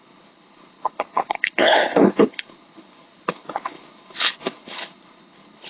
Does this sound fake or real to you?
fake